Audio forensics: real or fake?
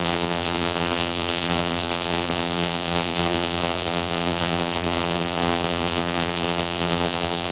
fake